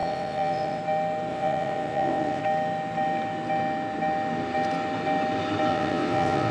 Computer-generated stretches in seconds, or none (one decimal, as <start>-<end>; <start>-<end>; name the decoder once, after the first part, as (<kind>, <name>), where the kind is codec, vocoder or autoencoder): 0.0-0.8 (vocoder, WaveNeXt); 1.3-2.4; 5.7-6.5